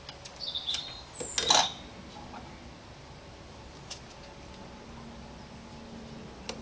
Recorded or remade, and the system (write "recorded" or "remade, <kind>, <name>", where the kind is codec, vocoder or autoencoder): recorded